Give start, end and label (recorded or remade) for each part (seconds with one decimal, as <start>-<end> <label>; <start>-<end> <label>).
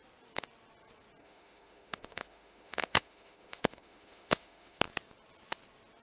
0.0-1.2 recorded; 1.2-4.8 remade; 4.8-6.0 recorded